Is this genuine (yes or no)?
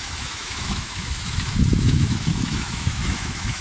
no